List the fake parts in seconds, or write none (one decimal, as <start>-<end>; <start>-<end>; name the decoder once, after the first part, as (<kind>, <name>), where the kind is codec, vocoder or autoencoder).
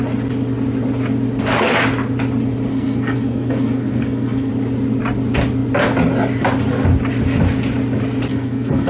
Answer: 2.7-4.5 (codec, SNAC); 8.3-8.9